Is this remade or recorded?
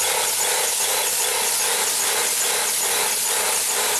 recorded